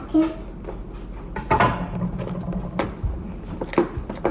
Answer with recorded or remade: recorded